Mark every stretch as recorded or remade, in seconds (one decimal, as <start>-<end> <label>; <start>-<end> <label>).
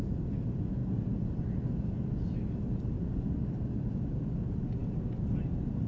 0.0-5.9 recorded